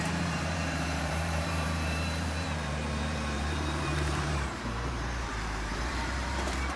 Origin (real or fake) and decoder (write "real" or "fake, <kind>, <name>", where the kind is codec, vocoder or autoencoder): fake, vocoder, BigVGAN v2